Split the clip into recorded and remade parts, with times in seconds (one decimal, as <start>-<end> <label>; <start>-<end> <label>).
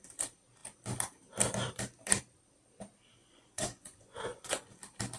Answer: 0.0-3.2 recorded; 3.2-4.8 remade; 4.8-5.2 recorded